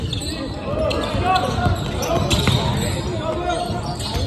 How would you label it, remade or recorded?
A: recorded